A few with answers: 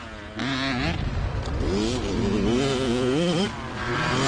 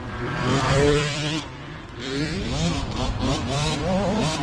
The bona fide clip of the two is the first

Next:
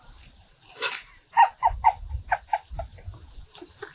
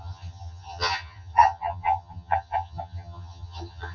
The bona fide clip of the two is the first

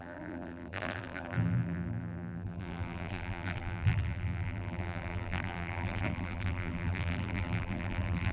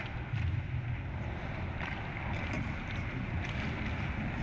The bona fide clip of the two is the second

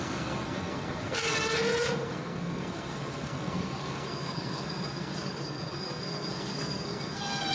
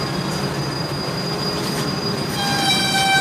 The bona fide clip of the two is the second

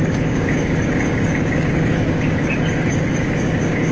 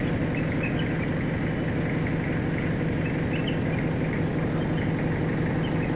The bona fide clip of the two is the second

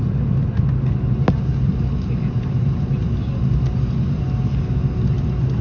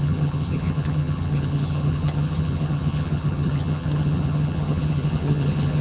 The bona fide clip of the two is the first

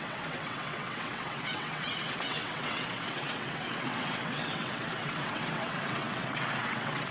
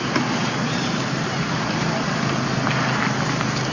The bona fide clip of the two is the second